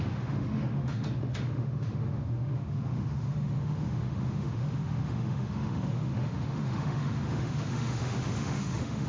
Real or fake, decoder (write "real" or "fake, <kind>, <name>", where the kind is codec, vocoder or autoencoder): fake, autoencoder, DAC-VAE